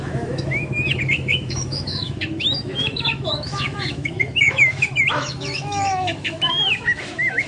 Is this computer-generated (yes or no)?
yes